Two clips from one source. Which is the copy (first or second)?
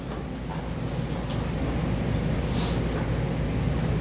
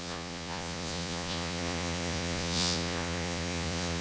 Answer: second